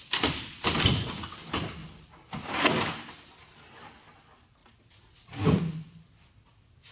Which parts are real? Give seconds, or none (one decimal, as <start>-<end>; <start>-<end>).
0.0-4.6; 5.5-6.9